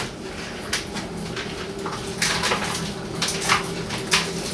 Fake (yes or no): no